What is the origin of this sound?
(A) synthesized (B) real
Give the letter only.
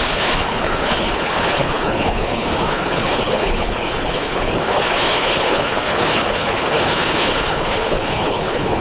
A